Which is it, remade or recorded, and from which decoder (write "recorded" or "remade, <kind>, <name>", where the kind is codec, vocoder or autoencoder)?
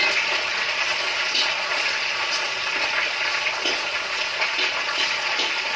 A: remade, vocoder, Vocos